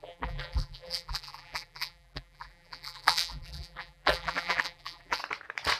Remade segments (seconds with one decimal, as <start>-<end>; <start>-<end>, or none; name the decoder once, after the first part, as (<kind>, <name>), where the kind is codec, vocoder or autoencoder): 0.0-5.2 (vocoder, BigVGAN v2)